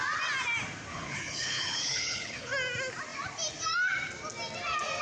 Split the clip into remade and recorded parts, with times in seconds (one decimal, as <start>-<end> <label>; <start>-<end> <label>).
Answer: 0.0-0.9 recorded; 0.9-2.5 remade; 2.5-5.0 recorded